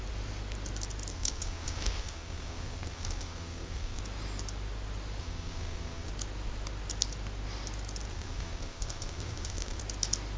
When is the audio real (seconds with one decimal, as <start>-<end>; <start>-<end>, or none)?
0.0-1.1; 4.0-5.2; 6.1-8.1; 9.8-10.4